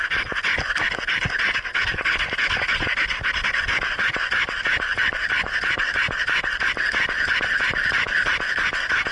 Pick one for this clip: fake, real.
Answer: real